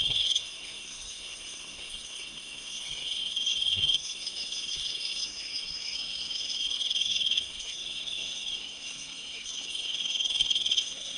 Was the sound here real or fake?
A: fake